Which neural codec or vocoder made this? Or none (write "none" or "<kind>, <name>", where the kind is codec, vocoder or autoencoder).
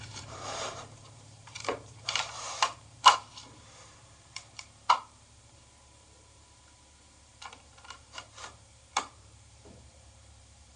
vocoder, BigVGAN v2